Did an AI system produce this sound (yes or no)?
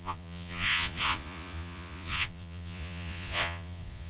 yes